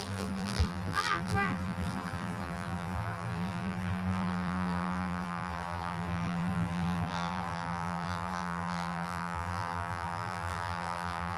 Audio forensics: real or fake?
fake